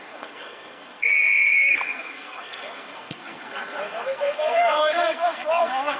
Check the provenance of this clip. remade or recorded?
remade